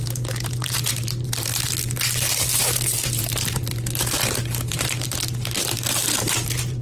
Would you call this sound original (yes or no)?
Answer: no